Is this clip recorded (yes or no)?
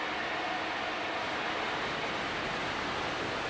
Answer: yes